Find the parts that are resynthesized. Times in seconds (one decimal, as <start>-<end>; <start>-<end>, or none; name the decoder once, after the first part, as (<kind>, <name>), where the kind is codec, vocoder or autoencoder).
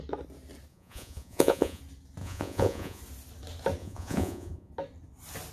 0.7-1.8 (vocoder, Vocos); 2.2-3.0; 3.8-4.7